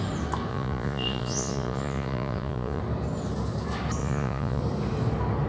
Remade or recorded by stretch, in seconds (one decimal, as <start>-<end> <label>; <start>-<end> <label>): 0.0-0.5 recorded; 0.5-2.8 remade; 2.8-4.0 recorded; 4.0-4.6 remade; 4.6-5.5 recorded